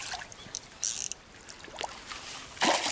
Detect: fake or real real